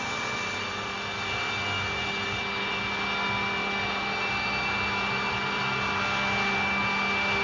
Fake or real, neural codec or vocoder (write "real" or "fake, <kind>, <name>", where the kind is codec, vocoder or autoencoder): real